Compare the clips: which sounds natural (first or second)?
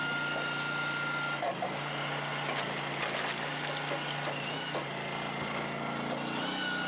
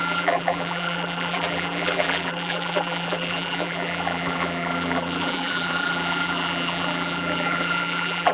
first